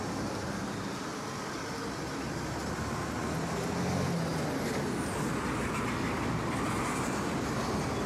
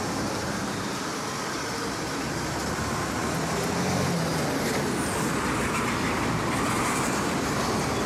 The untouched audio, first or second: first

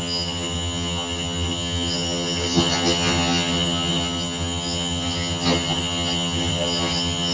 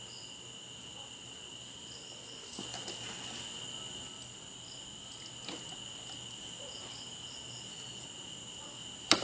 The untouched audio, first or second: second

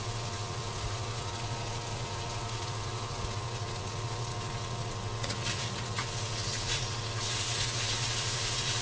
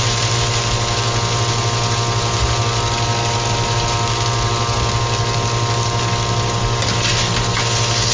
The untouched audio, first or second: second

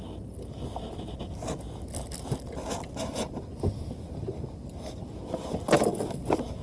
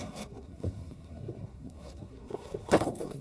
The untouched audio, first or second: first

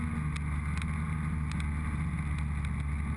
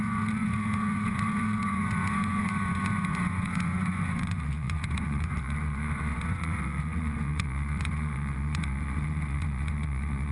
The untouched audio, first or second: first